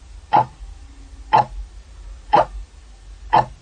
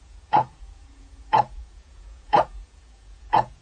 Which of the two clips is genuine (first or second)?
first